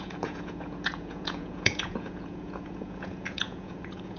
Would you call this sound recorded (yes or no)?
no